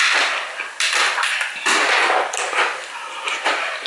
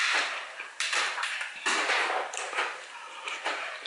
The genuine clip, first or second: first